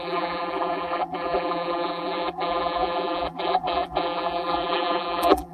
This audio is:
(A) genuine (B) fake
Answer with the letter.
B